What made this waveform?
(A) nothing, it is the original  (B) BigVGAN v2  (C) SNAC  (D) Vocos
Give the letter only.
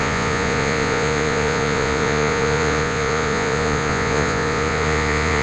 D